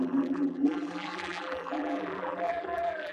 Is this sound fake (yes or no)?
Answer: yes